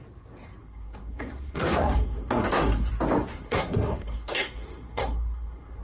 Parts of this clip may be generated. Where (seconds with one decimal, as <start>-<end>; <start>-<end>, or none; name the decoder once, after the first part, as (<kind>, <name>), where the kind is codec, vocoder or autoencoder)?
0.6-2.9 (codec, SNAC); 3.3-5.8